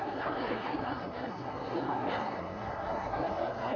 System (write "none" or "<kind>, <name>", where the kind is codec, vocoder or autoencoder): codec, SNAC